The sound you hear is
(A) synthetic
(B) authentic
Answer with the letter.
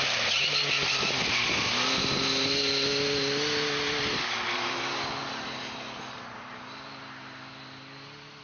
B